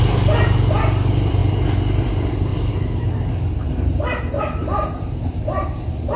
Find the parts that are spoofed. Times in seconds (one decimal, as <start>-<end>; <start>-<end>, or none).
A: none